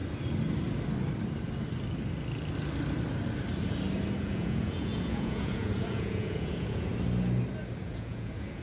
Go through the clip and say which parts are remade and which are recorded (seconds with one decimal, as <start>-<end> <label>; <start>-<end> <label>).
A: 0.0-4.2 recorded; 4.2-6.9 remade; 6.9-7.8 recorded; 7.8-8.6 remade